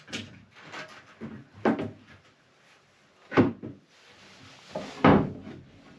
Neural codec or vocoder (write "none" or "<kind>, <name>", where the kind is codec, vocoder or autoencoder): none